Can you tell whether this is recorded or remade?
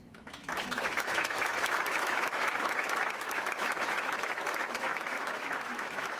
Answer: remade